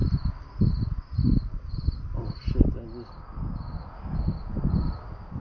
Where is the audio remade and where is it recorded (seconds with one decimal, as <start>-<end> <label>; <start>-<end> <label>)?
0.0-5.4 recorded